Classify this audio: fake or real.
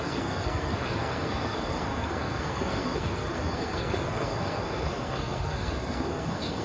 fake